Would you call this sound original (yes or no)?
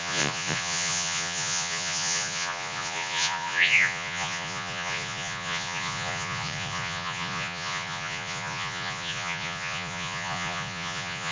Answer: no